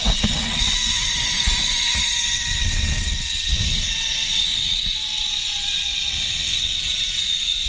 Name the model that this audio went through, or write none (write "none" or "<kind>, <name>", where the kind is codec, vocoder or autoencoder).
vocoder, WaveNeXt